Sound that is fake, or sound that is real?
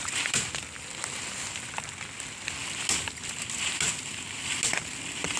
real